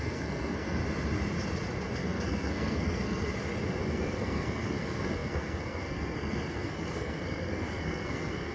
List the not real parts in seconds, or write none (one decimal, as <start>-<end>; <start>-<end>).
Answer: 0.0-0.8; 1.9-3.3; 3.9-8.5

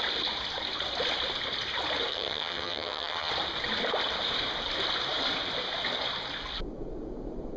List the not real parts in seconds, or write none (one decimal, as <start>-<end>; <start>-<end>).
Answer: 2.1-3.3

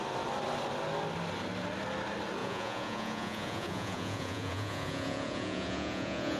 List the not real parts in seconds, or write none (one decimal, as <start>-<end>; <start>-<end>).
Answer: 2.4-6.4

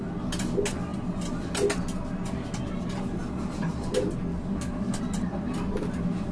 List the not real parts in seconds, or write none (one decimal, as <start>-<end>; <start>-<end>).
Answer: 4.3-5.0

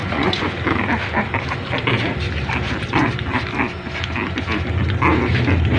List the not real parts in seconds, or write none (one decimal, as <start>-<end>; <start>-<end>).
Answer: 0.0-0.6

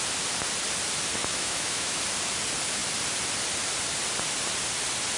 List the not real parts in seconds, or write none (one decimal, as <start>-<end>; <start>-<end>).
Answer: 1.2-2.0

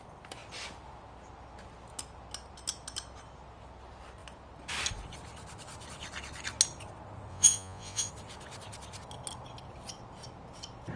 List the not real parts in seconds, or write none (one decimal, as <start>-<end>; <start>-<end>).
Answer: 7.3-8.1

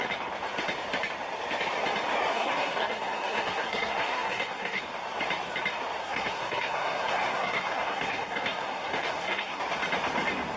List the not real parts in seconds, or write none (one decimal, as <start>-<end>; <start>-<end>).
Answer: 2.3-4.8; 6.0-9.6